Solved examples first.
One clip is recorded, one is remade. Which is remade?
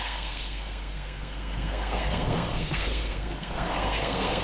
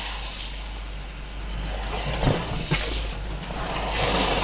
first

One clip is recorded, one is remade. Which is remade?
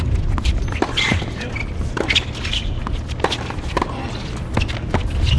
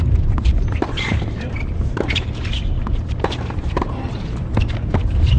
second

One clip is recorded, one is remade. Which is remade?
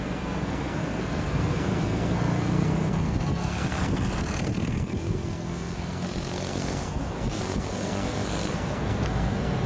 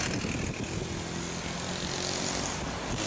first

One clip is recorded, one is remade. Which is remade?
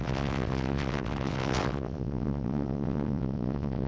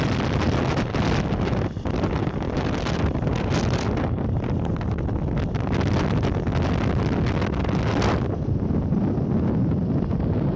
first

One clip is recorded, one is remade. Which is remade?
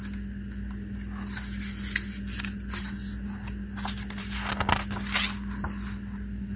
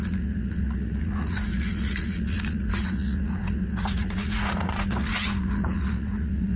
second